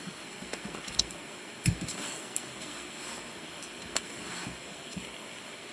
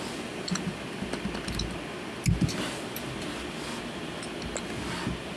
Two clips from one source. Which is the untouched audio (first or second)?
second